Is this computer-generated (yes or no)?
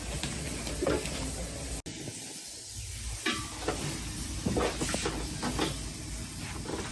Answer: no